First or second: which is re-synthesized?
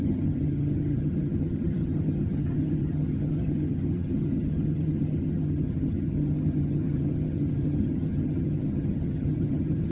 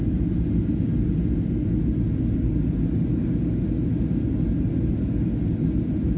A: first